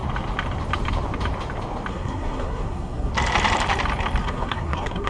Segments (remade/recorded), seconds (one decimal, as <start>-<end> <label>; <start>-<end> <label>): 0.0-1.9 recorded; 1.9-3.1 remade; 3.1-4.2 recorded; 4.2-5.1 remade